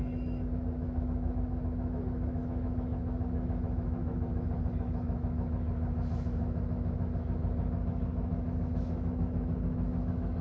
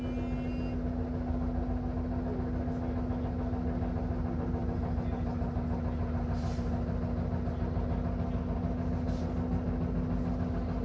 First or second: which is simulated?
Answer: first